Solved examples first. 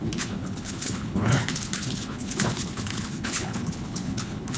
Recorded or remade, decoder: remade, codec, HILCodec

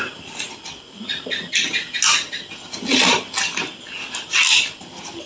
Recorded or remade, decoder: recorded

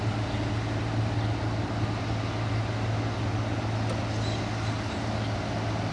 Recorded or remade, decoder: recorded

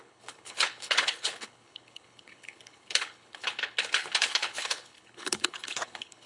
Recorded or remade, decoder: remade, codec, HILCodec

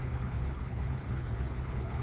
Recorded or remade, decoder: remade, codec, HILCodec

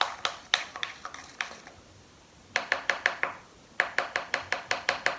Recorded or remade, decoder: recorded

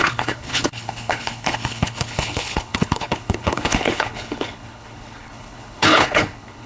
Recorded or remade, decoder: remade, codec, HILCodec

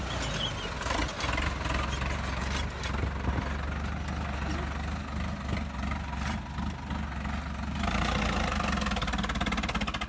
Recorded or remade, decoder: recorded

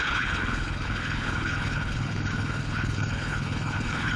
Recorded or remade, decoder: remade, codec, HILCodec